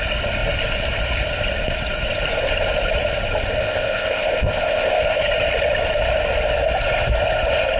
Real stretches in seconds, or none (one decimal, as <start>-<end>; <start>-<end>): 0.0-3.6; 5.2-7.8

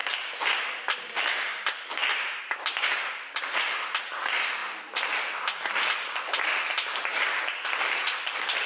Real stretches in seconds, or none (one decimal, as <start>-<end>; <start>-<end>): 0.0-1.0; 2.0-3.5; 4.6-5.7

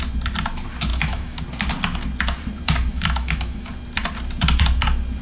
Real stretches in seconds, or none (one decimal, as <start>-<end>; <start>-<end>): 0.0-0.9; 1.4-2.9; 3.7-5.2

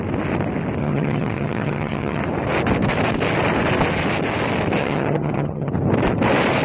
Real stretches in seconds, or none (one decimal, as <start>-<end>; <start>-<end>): 0.0-0.8; 2.2-4.8; 5.7-6.6

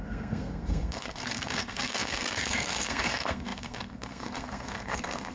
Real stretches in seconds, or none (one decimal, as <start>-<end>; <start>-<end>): none

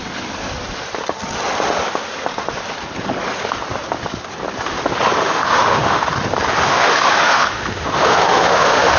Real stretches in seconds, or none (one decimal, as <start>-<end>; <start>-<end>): 0.0-5.2; 6.1-6.7